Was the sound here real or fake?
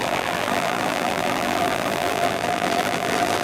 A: fake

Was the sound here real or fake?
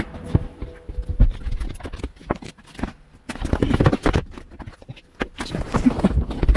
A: real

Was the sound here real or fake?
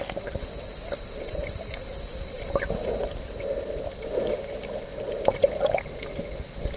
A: real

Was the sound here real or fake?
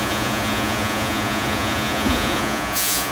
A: fake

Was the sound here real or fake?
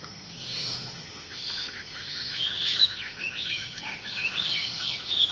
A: fake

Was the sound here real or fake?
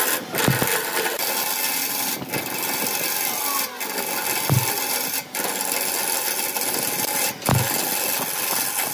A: real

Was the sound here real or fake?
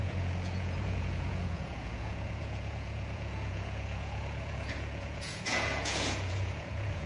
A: fake